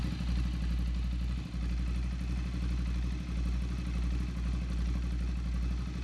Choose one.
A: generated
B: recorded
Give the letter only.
B